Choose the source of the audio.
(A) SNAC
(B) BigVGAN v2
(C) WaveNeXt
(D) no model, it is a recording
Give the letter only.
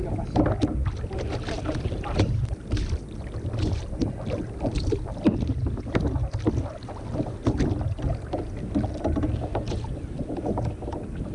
D